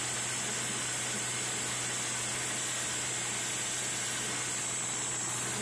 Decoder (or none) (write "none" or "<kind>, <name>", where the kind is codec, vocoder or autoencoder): none